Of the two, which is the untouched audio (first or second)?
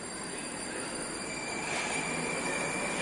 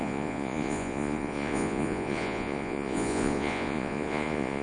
first